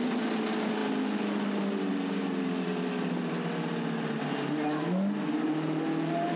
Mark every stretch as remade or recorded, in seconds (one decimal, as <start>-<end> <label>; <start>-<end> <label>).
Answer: 0.0-6.4 recorded